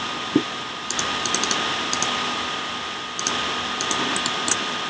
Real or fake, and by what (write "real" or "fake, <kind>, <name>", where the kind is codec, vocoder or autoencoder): real